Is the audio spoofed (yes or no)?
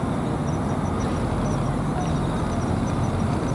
no